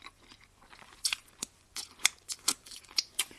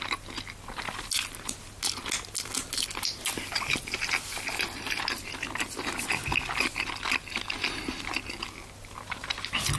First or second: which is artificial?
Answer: first